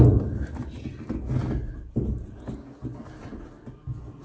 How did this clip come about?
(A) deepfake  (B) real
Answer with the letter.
B